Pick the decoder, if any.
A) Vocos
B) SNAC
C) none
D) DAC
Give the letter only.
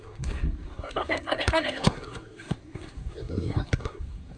B